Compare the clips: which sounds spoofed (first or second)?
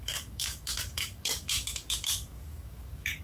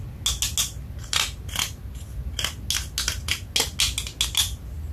first